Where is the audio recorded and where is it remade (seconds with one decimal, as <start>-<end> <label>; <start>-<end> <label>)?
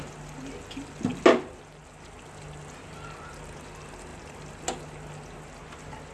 0.0-6.1 recorded